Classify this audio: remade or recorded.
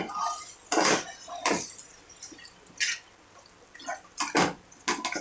recorded